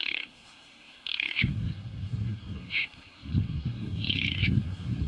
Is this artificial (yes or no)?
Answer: yes